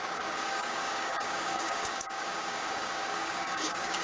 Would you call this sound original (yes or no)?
no